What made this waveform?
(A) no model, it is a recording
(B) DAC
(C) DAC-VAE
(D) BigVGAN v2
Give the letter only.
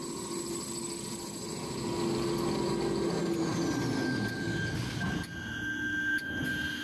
A